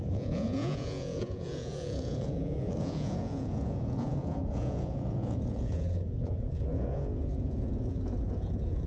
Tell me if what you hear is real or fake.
fake